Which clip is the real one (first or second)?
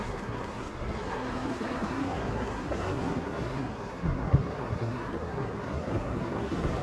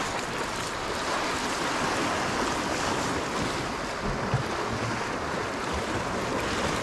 second